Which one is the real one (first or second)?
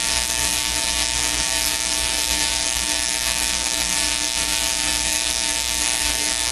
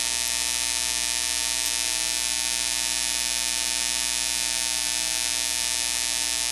second